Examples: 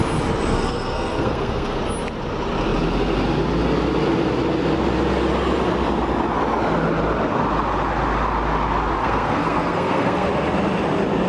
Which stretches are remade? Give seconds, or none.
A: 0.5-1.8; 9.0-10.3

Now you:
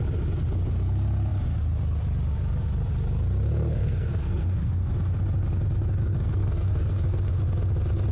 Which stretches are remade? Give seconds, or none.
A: 3.6-4.9; 6.0-7.3